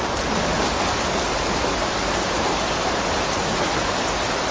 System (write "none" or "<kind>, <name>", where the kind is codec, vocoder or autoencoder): none